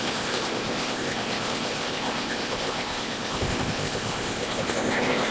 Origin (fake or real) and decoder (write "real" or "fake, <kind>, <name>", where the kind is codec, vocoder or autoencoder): fake, codec, ZipCodec